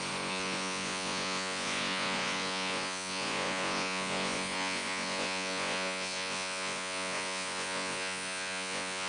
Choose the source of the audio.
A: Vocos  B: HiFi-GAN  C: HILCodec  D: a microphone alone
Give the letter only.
A